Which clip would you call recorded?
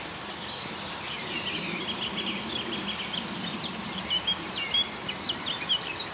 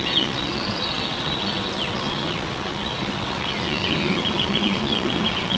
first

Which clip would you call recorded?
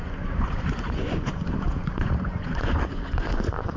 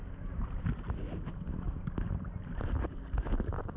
second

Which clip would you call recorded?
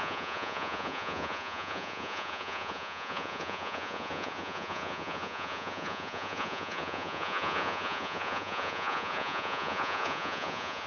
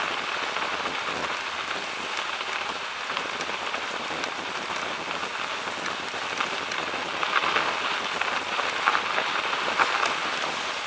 second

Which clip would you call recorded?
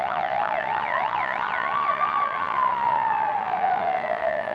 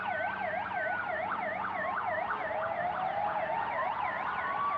second